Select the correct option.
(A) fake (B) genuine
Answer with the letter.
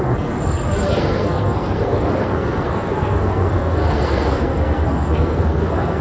A